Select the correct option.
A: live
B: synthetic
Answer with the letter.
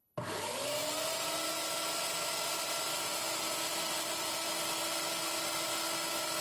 A